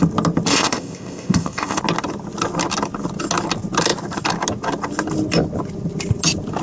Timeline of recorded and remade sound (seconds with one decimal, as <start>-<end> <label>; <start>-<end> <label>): 0.0-0.5 recorded; 0.5-1.8 remade; 1.8-6.6 recorded